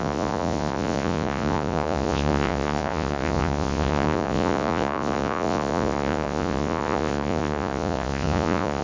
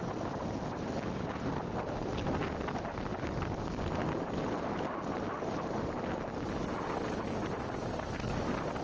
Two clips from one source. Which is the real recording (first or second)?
second